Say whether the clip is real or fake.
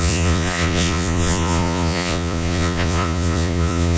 fake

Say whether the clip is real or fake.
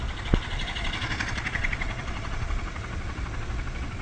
fake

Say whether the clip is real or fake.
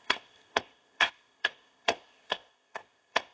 fake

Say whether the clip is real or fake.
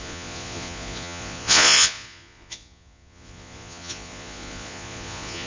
fake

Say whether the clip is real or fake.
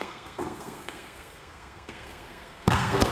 fake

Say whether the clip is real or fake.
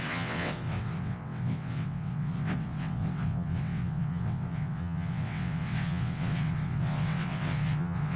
fake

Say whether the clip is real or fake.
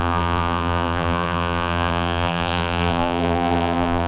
fake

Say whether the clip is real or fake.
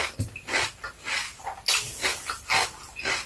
real